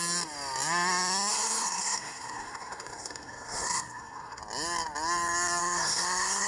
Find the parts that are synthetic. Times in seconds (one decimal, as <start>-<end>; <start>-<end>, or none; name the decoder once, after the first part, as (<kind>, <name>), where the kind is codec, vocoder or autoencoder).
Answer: 1.3-4.4 (codec, SNAC); 5.6-6.5